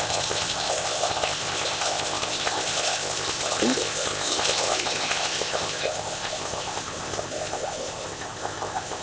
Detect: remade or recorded remade